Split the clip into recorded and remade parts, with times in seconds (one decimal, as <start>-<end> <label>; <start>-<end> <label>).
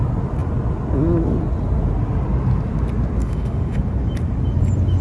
0.0-3.2 recorded; 3.2-3.8 remade; 3.8-5.0 recorded